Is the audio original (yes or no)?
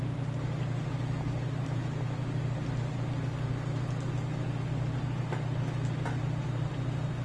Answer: yes